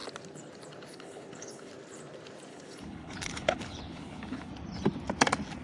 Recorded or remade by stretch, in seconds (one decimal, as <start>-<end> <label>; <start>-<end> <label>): 0.0-0.9 recorded; 0.9-1.7 remade; 1.7-2.5 recorded; 2.5-4.5 remade; 4.5-5.6 recorded